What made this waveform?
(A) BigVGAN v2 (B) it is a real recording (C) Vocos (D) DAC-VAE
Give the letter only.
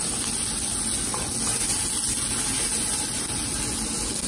B